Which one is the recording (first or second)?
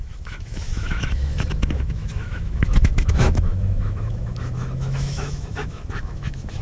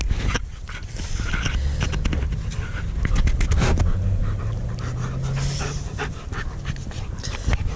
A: second